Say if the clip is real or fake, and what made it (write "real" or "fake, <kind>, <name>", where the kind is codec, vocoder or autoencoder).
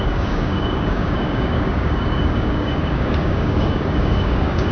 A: fake, codec, DAC